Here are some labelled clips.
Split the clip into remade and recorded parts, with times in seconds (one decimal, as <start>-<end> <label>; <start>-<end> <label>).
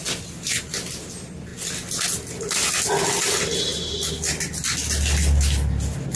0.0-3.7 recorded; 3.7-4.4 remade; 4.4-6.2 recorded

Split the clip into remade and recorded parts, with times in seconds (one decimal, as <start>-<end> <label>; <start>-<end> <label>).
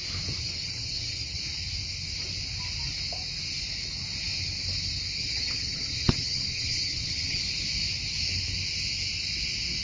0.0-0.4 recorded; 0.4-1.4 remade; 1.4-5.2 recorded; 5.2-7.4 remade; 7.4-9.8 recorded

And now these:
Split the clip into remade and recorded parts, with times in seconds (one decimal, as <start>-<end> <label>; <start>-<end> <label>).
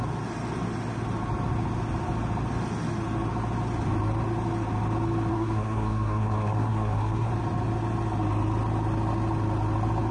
0.0-5.3 recorded; 5.3-7.3 remade; 7.3-10.1 recorded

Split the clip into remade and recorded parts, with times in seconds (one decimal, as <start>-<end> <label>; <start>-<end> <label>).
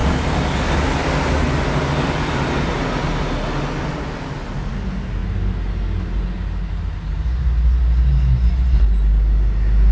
0.0-9.9 recorded